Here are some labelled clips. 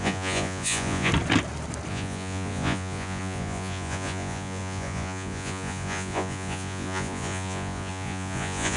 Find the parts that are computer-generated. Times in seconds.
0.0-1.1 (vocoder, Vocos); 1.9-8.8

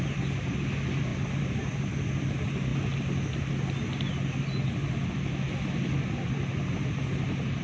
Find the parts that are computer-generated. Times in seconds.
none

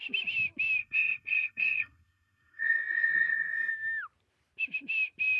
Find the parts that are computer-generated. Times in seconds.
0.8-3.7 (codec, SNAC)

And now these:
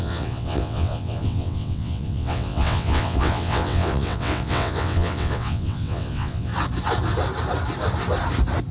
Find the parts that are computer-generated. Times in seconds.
0.0-6.5 (vocoder, WaveNeXt)

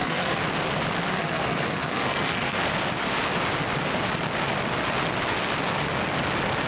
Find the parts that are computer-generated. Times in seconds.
0.0-0.4 (codec, SNAC); 1.1-2.6

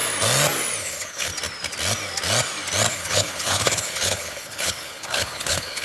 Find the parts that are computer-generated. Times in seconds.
0.8-1.3 (codec, HILCodec); 2.9-5.8

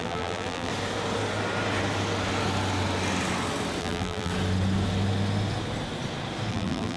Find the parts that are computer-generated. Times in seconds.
0.0-0.7 (vocoder, BigVGAN v2); 3.8-4.3; 6.5-7.0

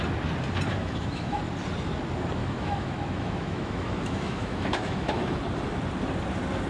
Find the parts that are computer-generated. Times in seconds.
0.8-1.4 (autoencoder, DAC-VAE); 2.4-5.4